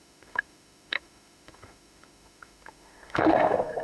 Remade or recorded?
remade